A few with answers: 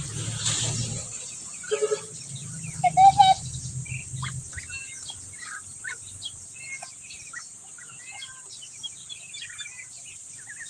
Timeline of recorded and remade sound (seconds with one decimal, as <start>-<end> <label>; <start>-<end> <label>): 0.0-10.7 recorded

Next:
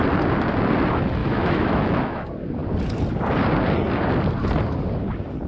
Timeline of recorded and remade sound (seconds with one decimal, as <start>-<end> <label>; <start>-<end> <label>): 0.0-1.2 recorded; 1.2-2.2 remade; 2.2-5.5 recorded

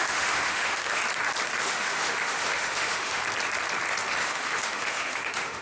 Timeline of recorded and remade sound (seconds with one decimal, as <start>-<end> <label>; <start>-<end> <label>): 0.0-1.0 remade; 1.0-1.6 recorded; 1.6-3.2 remade; 3.2-4.2 recorded; 4.2-5.6 remade

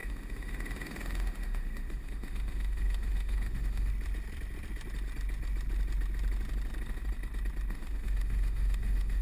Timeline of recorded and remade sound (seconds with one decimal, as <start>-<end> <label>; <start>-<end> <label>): 0.0-3.9 remade; 3.9-7.7 recorded; 7.7-9.2 remade

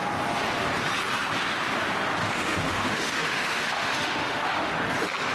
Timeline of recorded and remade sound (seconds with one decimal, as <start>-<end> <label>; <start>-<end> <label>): 0.0-2.2 recorded; 2.2-4.7 remade; 4.7-5.3 recorded

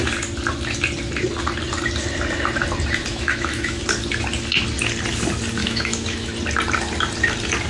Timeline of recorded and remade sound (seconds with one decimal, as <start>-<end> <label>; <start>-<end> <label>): 0.0-3.1 recorded; 3.1-3.8 remade; 3.8-5.6 recorded; 5.6-6.3 remade; 6.3-7.7 recorded